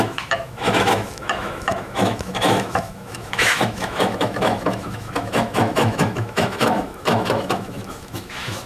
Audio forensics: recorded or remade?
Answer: remade